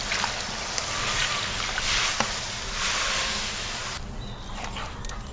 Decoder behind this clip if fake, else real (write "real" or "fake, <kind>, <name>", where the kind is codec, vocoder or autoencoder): real